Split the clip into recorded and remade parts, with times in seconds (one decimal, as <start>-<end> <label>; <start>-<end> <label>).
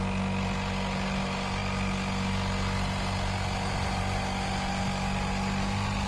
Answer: 0.0-6.1 recorded